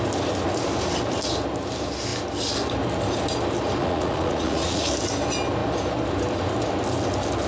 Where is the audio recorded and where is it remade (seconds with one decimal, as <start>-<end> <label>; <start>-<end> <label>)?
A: 0.0-3.8 recorded; 3.8-4.9 remade; 4.9-7.5 recorded